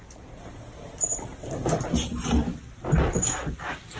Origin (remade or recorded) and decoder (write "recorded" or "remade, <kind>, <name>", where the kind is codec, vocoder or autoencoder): recorded